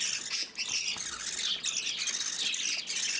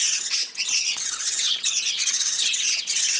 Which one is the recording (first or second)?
first